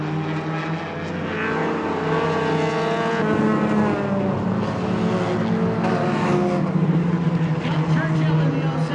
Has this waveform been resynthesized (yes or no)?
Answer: no